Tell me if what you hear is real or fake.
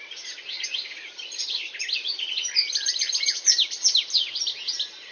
real